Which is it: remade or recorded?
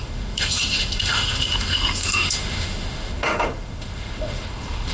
remade